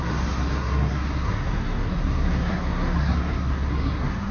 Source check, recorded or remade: remade